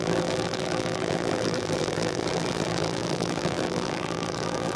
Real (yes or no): no